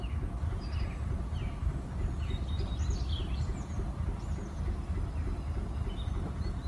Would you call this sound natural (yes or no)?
yes